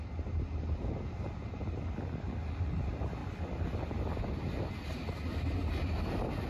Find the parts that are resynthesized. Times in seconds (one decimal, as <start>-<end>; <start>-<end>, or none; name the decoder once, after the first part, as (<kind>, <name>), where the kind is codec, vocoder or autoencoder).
none